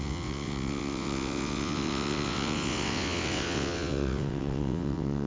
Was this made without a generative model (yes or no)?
no